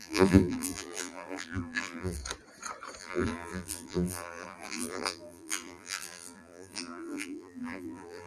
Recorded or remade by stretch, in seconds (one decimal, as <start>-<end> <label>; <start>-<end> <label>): 0.0-2.2 remade; 2.2-3.0 recorded; 3.0-8.3 remade